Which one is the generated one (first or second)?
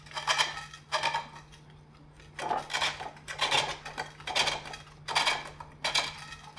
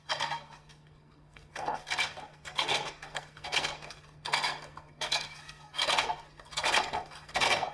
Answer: second